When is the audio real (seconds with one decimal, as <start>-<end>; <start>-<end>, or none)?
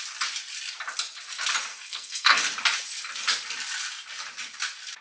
0.0-1.7; 2.4-5.0